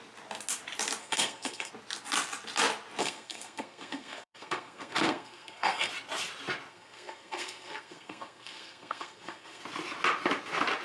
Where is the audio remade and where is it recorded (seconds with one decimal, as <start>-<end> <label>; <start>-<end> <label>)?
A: 0.0-1.0 recorded; 1.0-1.7 remade; 1.7-3.0 recorded; 3.0-5.9 remade; 5.9-6.7 recorded; 6.7-9.6 remade; 9.6-10.8 recorded